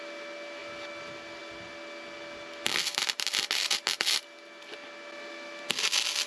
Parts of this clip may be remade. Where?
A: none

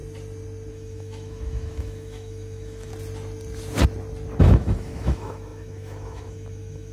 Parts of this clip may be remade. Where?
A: 0.7-2.9 (autoencoder, DAC-VAE); 4.4-6.9

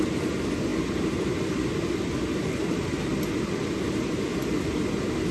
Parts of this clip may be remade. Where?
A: none

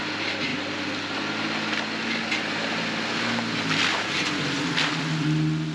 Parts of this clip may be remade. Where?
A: 3.9-4.4 (vocoder, Vocos)

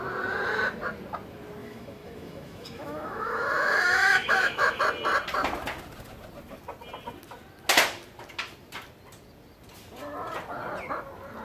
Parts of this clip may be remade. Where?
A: 1.6-4.8 (autoencoder, DAC-VAE)

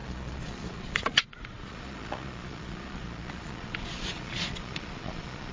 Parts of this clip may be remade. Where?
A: 0.0-5.5 (vocoder, Vocos)

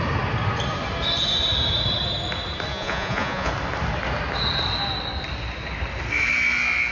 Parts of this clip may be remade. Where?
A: 2.7-3.5 (vocoder, Vocos)